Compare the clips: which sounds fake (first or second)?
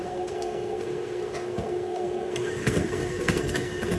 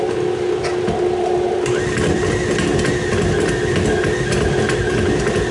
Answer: first